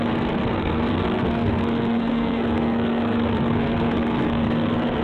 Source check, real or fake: fake